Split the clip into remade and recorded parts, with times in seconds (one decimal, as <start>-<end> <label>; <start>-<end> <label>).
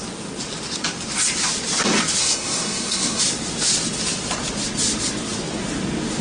0.0-2.2 recorded; 2.2-3.2 remade; 3.2-6.2 recorded